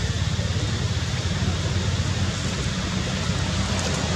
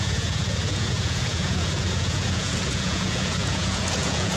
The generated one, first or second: second